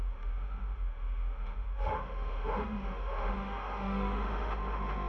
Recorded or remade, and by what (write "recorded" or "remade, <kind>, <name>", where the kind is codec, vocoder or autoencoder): remade, autoencoder, DAC-VAE